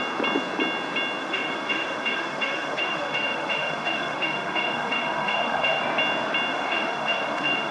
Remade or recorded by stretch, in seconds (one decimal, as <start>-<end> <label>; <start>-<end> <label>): 0.0-1.2 recorded; 1.2-5.8 remade; 5.8-6.5 recorded; 6.5-7.7 remade